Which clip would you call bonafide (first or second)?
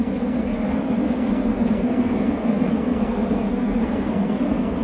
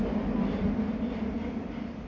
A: second